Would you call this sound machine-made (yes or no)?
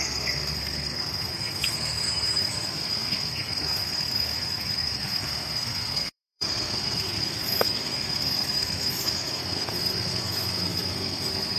yes